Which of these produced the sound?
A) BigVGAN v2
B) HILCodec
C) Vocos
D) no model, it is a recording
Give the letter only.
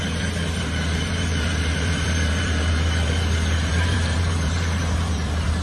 A